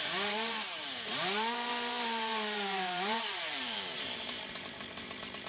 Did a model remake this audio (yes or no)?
yes